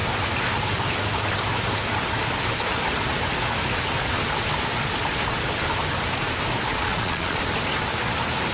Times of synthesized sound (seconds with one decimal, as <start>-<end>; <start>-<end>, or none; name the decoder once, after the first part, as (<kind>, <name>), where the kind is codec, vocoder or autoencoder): 6.7-7.4 (vocoder, Vocos)